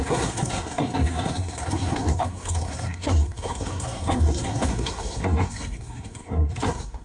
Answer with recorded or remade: remade